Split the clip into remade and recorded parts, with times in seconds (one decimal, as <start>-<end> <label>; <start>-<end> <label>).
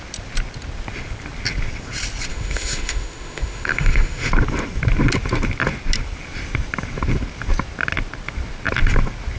0.0-2.3 recorded; 2.3-4.3 remade; 4.3-9.4 recorded